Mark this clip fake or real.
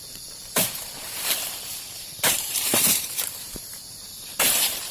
fake